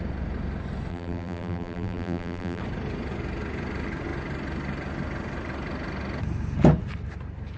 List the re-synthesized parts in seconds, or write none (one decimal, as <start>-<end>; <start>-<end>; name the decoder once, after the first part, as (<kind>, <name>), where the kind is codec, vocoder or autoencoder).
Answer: 0.9-2.6 (vocoder, BigVGAN v2)